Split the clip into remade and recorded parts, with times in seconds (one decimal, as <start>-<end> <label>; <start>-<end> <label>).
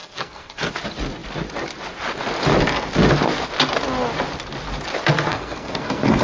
0.0-0.7 remade; 0.7-5.3 recorded; 5.3-6.2 remade